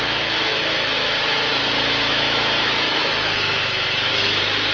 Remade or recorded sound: remade